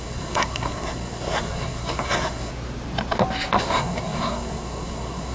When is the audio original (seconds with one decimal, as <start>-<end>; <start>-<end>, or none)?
2.5-3.6